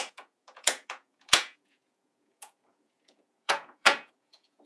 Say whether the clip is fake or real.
fake